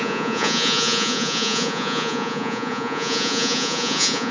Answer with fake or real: fake